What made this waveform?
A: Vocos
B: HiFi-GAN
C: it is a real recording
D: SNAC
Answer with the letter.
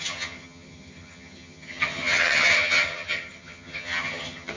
B